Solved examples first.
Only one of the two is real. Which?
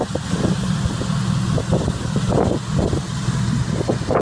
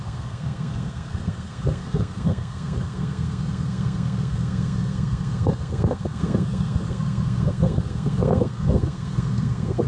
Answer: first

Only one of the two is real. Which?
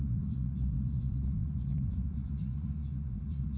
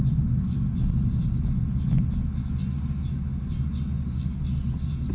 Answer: second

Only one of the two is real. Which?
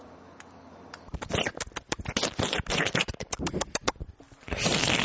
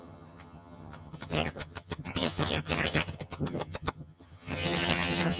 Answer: first